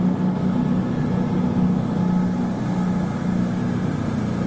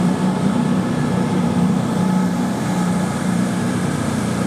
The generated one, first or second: second